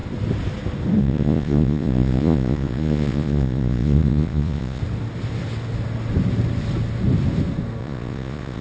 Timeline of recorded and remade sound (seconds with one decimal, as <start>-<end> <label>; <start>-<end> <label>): 0.0-1.0 recorded; 1.0-4.8 remade; 4.8-7.8 recorded; 7.8-8.6 remade